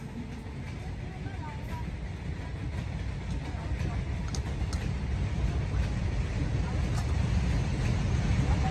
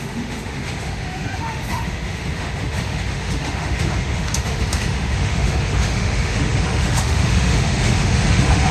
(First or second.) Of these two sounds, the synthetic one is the second